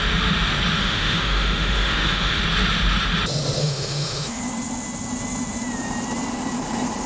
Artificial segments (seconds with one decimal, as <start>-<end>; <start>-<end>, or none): 0.8-2.4; 3.6-4.4